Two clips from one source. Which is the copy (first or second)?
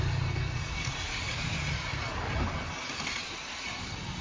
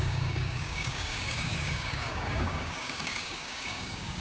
second